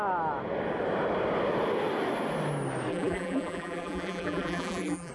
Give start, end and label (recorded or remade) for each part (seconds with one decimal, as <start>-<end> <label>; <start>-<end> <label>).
0.0-2.9 recorded; 2.9-5.1 remade